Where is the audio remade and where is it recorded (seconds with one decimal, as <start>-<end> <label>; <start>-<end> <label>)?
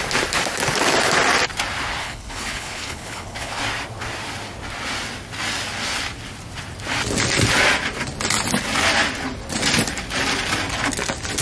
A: 0.0-2.0 recorded; 2.0-3.6 remade; 3.6-11.4 recorded